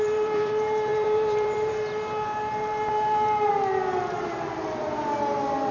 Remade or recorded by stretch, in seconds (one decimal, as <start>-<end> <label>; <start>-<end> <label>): 0.0-4.3 remade; 4.3-4.8 recorded; 4.8-5.7 remade